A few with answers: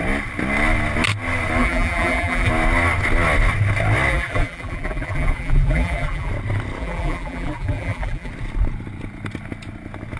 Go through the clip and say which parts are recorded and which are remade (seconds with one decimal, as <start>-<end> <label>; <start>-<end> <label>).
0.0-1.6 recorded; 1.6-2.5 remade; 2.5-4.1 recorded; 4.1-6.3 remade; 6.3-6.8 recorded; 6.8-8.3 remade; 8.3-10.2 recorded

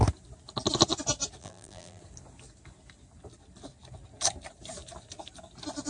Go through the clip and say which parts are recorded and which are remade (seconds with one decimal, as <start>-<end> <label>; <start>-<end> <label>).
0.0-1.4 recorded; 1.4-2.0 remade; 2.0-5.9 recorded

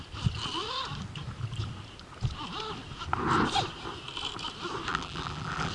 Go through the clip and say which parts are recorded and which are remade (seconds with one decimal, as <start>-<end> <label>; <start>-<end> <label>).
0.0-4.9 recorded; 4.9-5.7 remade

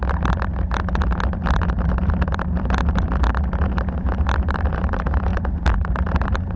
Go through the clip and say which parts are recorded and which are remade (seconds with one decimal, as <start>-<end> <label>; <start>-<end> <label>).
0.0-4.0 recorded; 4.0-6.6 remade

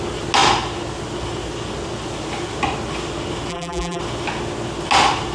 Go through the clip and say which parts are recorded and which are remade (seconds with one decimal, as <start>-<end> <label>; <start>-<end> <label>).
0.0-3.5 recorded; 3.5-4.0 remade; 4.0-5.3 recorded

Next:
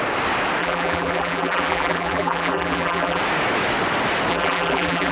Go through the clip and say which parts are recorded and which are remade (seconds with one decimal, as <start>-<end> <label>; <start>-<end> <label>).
0.0-0.6 recorded; 0.6-3.2 remade; 3.2-4.3 recorded; 4.3-5.1 remade

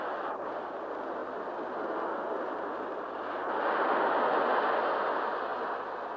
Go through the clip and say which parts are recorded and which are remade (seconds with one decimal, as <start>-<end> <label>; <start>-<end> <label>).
0.0-1.2 remade; 1.2-4.9 recorded; 4.9-5.5 remade; 5.5-6.2 recorded

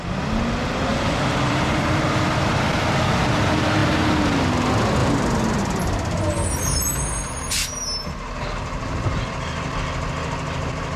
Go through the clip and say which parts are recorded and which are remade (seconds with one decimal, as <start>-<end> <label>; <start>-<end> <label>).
0.0-0.9 recorded; 0.9-2.0 remade; 2.0-5.0 recorded; 5.0-5.6 remade; 5.6-11.0 recorded